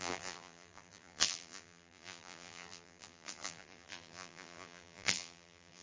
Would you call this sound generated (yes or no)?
yes